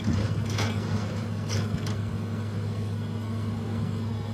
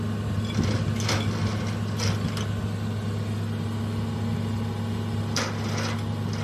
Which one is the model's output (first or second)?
first